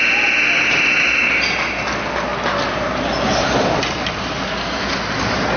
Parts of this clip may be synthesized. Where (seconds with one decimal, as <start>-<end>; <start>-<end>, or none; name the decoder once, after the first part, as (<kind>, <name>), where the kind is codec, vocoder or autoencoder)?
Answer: none